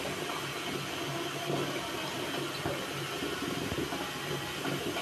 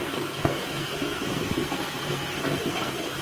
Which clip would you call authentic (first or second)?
first